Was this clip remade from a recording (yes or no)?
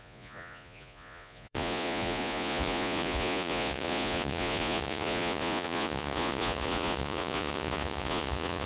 yes